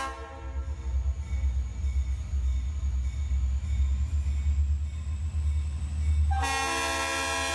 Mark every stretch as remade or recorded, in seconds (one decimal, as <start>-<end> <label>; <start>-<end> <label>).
0.0-7.5 recorded